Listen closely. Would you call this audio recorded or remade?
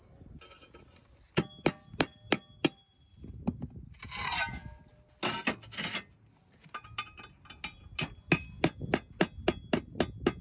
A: recorded